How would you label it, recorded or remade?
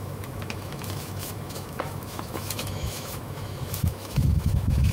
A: remade